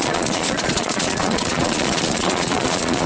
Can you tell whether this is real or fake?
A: fake